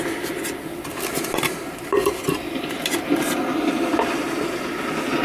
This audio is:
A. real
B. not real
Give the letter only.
A